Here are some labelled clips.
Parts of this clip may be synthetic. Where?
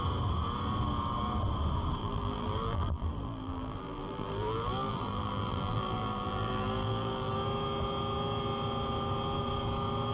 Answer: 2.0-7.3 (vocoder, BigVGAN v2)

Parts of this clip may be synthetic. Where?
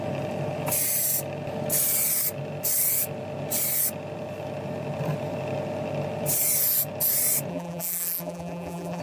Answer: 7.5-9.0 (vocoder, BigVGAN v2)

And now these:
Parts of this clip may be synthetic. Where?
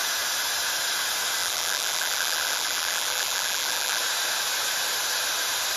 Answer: 1.4-4.0 (vocoder, BigVGAN v2)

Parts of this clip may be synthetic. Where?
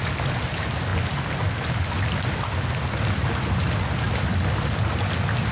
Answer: none